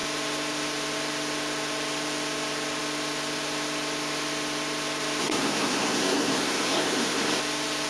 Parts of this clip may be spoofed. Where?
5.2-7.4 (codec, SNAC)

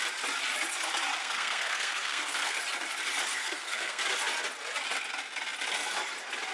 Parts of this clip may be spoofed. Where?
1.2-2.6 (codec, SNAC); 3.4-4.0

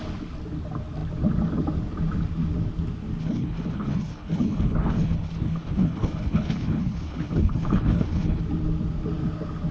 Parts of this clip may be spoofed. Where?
3.2-8.4 (codec, HILCodec)

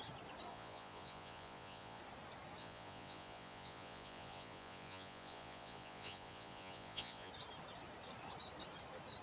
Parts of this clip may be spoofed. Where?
0.5-2.0 (vocoder, Vocos); 2.6-7.3

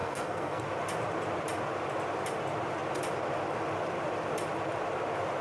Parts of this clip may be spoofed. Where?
0.0-0.6 (codec, SNAC)

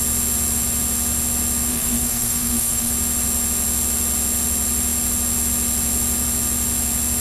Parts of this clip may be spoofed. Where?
1.7-2.9 (codec, SNAC)